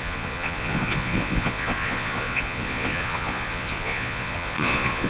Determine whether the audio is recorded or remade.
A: remade